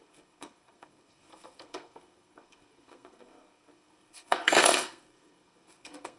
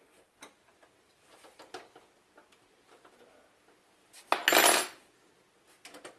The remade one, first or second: first